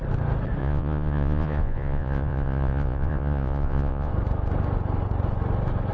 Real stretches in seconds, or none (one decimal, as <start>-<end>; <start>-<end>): 0.0-0.6; 4.1-5.9